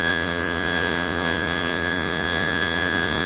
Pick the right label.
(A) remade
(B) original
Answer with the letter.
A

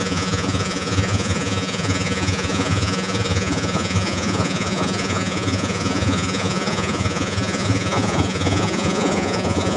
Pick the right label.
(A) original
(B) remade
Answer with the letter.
B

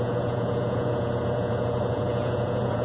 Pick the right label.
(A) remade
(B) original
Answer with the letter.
A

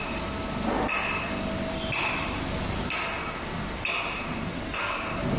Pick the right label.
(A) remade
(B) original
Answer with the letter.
B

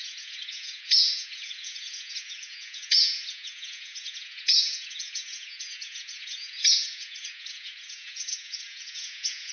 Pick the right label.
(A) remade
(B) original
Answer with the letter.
A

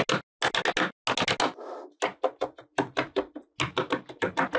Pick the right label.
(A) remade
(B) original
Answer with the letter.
B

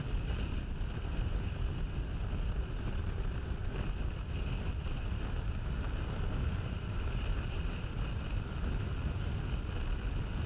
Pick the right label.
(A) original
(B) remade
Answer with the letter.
A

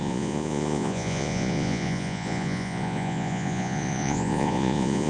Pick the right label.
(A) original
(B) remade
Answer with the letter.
B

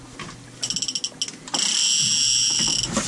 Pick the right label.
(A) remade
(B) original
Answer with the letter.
B